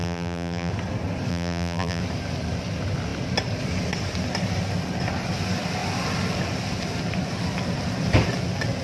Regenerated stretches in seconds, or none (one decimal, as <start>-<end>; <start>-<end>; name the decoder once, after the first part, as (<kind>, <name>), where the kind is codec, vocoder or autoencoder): 0.0-0.7 (vocoder, BigVGAN v2); 1.3-2.0